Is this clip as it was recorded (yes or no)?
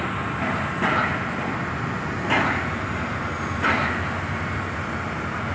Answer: yes